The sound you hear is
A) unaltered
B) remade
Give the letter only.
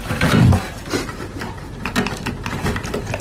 B